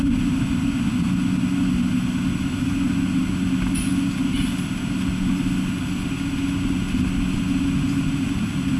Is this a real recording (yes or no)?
yes